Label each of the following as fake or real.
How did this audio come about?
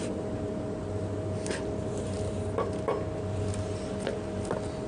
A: real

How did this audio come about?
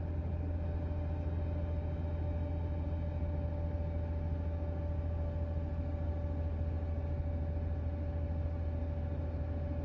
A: real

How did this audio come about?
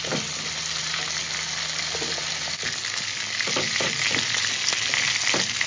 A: real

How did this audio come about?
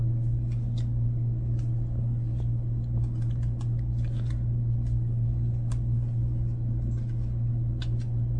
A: real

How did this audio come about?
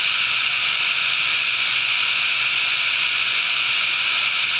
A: fake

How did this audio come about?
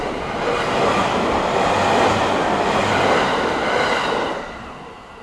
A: real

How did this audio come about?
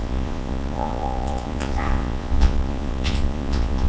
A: fake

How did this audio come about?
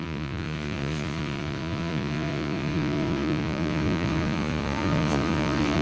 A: fake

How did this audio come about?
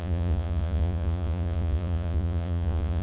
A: fake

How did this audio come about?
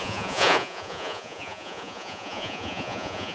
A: fake